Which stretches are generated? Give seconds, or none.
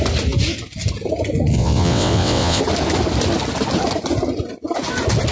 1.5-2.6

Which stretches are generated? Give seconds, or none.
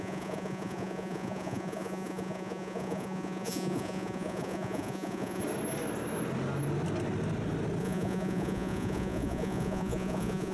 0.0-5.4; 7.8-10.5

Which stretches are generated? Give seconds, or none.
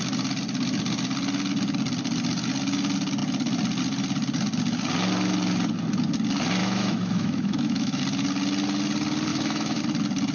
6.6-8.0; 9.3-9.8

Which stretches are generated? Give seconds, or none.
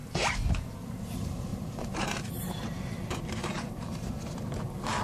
1.5-4.5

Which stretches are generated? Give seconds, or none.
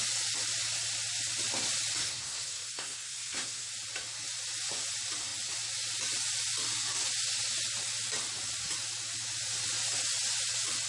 2.0-3.7